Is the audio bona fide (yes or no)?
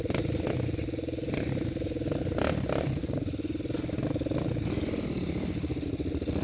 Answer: yes